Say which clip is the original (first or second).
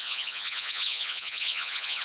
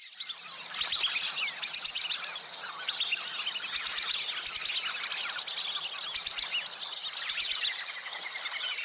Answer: second